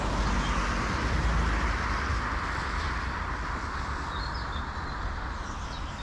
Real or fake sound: real